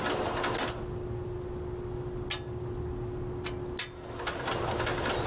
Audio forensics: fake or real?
real